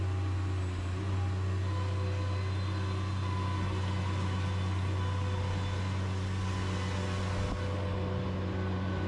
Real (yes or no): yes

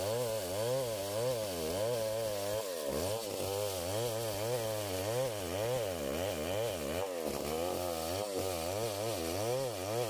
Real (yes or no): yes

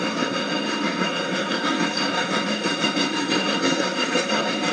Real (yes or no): no